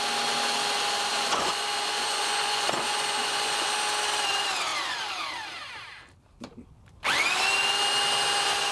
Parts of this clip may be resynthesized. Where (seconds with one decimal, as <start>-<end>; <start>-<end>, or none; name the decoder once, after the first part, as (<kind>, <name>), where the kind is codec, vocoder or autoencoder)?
1.1-3.7 (vocoder, Vocos)